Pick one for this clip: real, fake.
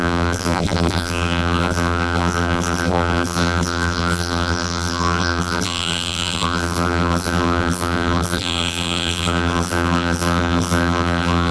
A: fake